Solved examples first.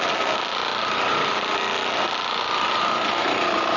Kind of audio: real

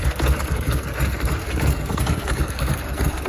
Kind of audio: fake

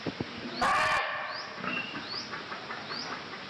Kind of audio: real